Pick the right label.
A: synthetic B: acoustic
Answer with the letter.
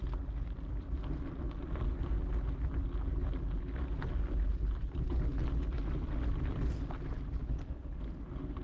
B